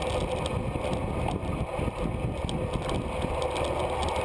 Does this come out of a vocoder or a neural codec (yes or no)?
no